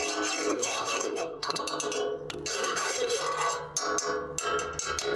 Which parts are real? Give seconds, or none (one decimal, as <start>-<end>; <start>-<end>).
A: 0.0-0.5; 1.6-2.5; 3.2-5.2